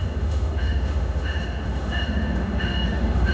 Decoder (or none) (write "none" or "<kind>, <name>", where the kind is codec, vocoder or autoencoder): autoencoder, DAC-VAE